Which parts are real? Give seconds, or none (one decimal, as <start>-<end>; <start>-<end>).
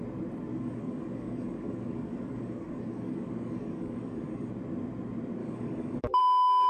0.0-0.5; 4.5-5.4; 6.2-6.7